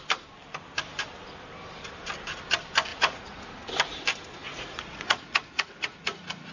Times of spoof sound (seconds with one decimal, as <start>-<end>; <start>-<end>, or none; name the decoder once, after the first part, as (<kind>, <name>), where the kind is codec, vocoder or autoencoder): 2.9-3.4 (vocoder, Vocos); 4.4-6.5